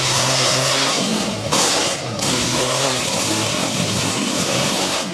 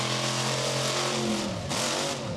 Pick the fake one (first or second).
first